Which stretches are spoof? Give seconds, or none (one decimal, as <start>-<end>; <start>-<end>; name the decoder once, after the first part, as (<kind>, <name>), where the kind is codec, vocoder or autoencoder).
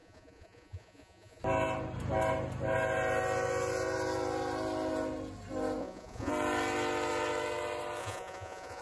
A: 0.0-1.4 (vocoder, Vocos); 5.8-6.3; 8.0-8.8